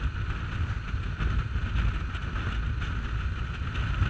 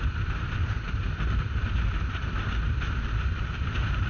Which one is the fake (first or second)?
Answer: second